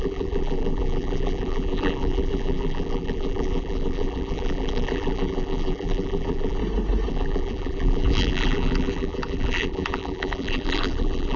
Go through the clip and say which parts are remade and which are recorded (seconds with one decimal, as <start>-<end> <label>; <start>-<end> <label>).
0.0-6.6 remade; 6.6-7.1 recorded; 7.1-11.4 remade